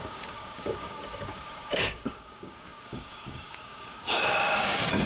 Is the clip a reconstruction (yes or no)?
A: yes